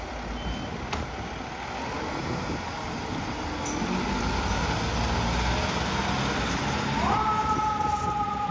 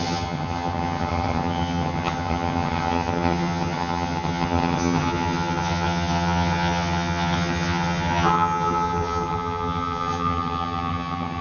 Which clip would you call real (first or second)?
first